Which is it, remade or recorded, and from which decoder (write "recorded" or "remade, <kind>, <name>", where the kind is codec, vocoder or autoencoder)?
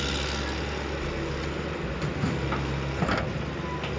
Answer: recorded